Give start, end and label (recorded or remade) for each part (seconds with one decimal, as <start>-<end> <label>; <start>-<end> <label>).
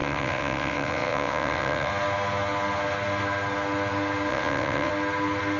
0.0-1.9 remade; 1.9-4.3 recorded; 4.3-4.9 remade; 4.9-5.6 recorded